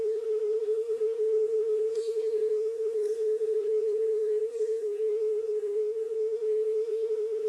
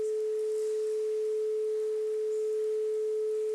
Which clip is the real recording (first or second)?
second